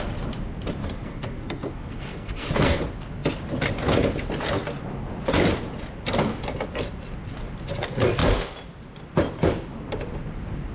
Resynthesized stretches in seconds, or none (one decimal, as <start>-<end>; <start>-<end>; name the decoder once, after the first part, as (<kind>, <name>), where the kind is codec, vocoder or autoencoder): 0.8-2.8 (codec, SNAC)